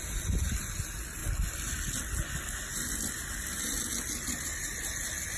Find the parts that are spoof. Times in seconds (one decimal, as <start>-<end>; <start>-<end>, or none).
none